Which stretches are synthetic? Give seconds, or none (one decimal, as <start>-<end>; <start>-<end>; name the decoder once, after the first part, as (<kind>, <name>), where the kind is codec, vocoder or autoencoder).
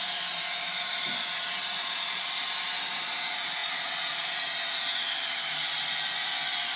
1.8-2.3 (vocoder, Vocos)